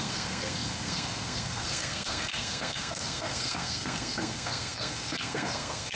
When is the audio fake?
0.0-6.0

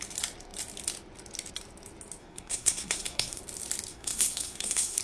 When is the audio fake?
2.2-3.4; 3.9-5.0

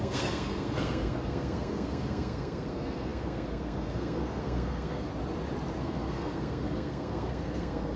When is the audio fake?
0.0-5.1; 5.8-8.0

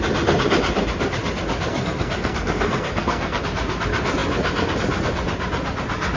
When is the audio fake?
1.7-3.4

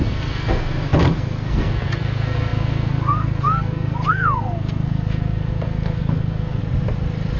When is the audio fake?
0.0-6.6

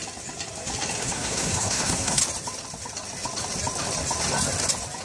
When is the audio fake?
1.0-2.2

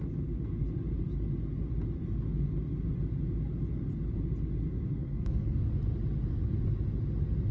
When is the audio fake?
4.9-5.7

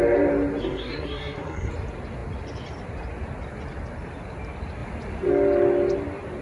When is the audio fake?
0.6-1.7